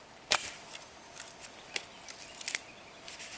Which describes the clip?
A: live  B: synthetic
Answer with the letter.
A